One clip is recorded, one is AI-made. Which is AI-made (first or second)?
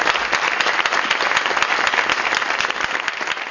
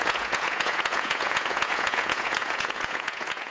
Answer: second